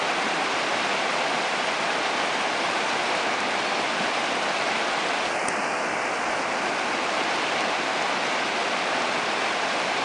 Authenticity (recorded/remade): recorded